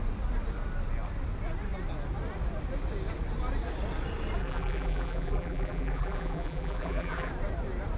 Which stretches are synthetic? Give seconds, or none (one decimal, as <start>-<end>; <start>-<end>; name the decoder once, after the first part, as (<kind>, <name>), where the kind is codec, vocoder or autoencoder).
4.4-7.3 (vocoder, BigVGAN v2)